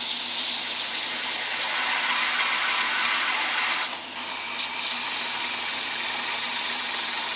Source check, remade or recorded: recorded